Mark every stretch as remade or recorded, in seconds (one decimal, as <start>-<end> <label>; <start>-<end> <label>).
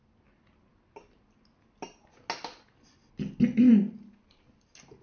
0.0-5.0 recorded